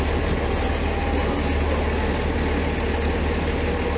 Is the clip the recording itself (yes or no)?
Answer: yes